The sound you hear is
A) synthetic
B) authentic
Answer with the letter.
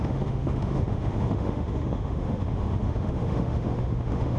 A